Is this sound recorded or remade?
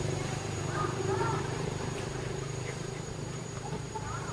remade